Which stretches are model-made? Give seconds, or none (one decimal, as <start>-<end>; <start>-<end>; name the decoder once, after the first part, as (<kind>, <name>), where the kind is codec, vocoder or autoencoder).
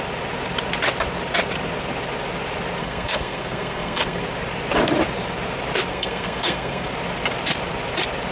2.8-4.2 (codec, SNAC); 5.9-6.9